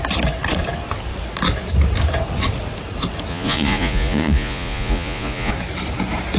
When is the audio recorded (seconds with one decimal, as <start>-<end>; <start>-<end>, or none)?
0.0-3.3; 5.5-6.4